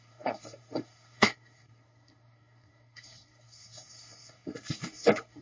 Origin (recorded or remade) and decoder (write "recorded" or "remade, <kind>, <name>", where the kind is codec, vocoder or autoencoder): remade, codec, SNAC